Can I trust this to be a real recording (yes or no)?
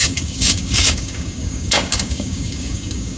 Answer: no